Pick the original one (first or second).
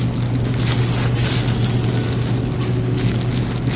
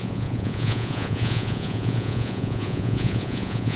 first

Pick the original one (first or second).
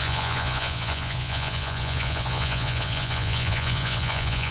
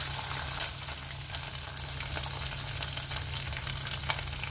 second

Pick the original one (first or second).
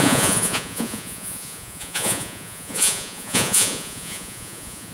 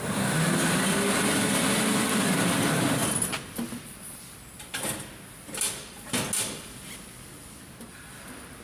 second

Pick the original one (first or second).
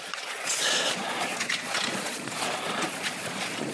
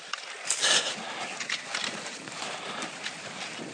second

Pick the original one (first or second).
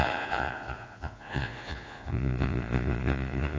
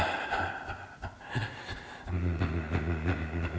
second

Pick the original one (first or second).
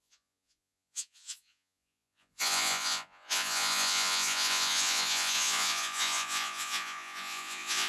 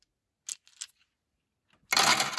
second